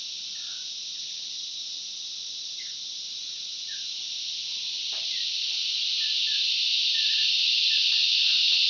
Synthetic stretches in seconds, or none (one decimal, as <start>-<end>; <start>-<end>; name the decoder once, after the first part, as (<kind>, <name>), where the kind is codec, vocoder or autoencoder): 0.6-4.1 (vocoder, Vocos)